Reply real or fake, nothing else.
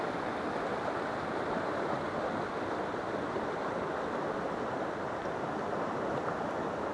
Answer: real